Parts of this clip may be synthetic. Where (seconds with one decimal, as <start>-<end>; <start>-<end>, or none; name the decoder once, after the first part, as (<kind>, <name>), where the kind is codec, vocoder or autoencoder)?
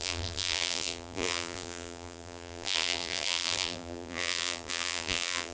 0.0-5.5 (vocoder, BigVGAN v2)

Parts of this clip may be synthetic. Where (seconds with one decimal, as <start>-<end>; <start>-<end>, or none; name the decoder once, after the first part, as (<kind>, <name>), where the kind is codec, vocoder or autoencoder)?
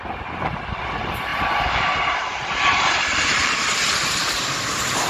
1.3-4.4 (vocoder, BigVGAN v2)